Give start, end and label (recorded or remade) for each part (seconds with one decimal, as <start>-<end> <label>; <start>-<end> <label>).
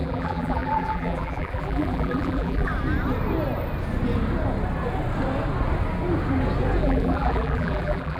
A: 0.0-2.7 remade; 2.7-6.8 recorded; 6.8-8.2 remade